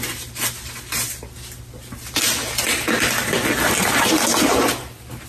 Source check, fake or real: real